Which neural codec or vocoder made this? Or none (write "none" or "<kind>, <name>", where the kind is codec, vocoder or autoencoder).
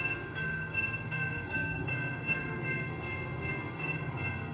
codec, SNAC